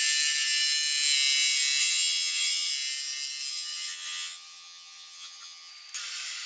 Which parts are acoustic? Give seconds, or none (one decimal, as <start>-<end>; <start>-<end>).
0.0-1.8; 2.7-3.5; 5.7-6.5